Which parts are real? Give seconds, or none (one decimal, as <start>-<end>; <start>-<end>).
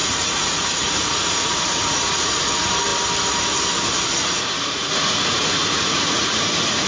2.4-4.2